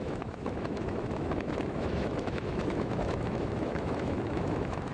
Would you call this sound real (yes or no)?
no